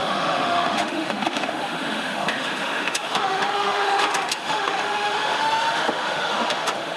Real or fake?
fake